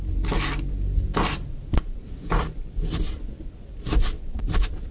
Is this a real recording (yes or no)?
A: yes